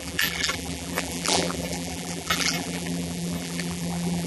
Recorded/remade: remade